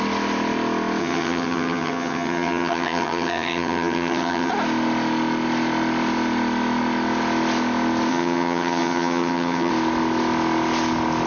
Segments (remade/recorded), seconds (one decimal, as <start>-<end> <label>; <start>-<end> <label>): 0.0-1.0 recorded; 1.0-4.5 remade; 4.5-8.1 recorded; 8.1-9.7 remade; 9.7-11.3 recorded

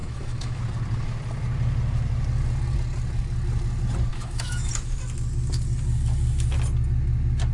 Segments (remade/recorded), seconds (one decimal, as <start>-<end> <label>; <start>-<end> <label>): 0.0-0.6 remade; 0.6-4.1 recorded; 4.1-4.7 remade; 4.7-7.5 recorded

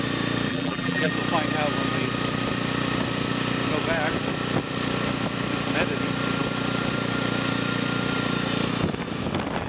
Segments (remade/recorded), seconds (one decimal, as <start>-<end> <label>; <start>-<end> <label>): 0.0-0.5 recorded; 0.5-1.1 remade; 1.1-9.7 recorded

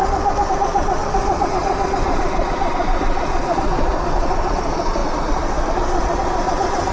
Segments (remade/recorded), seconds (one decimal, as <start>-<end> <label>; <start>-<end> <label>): 0.0-0.5 recorded; 0.5-6.9 remade

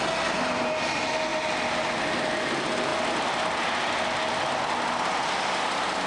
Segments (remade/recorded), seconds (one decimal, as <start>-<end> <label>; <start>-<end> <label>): 0.0-6.1 recorded